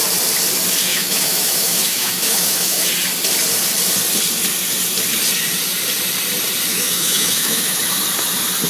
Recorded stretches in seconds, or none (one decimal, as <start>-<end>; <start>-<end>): 0.0-0.9; 2.9-6.7; 7.8-8.7